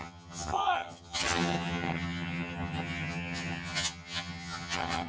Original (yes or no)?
no